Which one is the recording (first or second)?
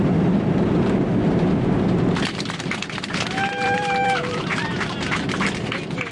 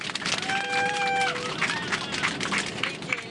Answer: second